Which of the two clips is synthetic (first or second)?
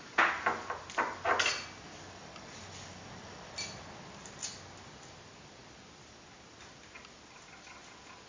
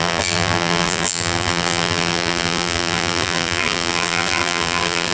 second